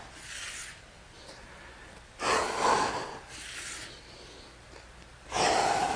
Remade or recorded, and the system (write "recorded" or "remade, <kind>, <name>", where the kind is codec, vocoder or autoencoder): recorded